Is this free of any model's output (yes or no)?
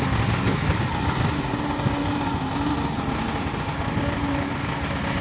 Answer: yes